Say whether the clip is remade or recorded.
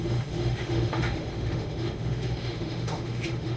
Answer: remade